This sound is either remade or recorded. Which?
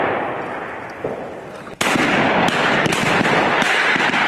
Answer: recorded